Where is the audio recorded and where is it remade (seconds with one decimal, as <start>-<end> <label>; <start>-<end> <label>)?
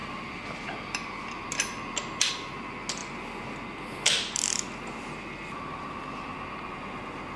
0.0-2.3 remade; 2.3-3.0 recorded; 3.0-6.7 remade; 6.7-7.4 recorded